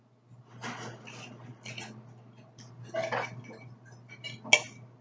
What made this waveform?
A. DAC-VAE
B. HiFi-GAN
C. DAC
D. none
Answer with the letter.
D